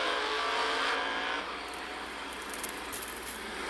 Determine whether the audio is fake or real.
real